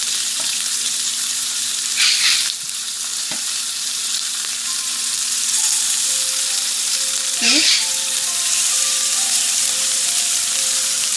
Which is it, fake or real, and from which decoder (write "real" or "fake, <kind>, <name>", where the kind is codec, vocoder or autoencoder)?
fake, vocoder, BigVGAN v2